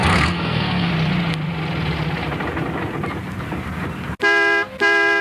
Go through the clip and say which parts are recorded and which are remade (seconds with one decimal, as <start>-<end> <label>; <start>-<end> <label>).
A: 0.0-0.9 remade; 0.9-5.2 recorded